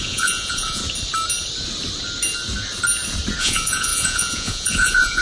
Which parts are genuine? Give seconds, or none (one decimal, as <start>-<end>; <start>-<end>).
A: 0.8-3.4